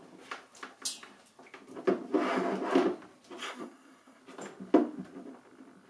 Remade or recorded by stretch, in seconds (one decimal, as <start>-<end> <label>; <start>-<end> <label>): 0.0-3.4 recorded; 3.4-4.2 remade; 4.2-5.9 recorded